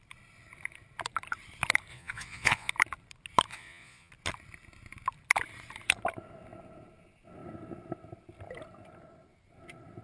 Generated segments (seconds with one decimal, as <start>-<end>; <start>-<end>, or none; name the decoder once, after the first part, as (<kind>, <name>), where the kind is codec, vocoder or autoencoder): 1.9-2.7 (vocoder, Vocos); 3.5-4.1